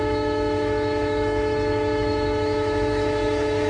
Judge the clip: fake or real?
fake